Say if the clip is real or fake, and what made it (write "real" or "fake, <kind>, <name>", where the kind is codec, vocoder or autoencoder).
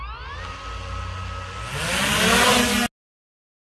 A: real